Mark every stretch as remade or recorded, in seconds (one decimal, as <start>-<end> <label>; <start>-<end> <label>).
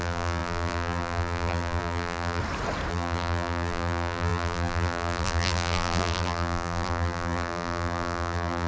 0.0-2.4 remade; 2.4-2.9 recorded; 2.9-8.7 remade